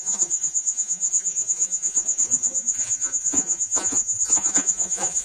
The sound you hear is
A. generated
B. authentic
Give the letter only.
A